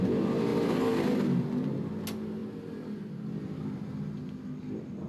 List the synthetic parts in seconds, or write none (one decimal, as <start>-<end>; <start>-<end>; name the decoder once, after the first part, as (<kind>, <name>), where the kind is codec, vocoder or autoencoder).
none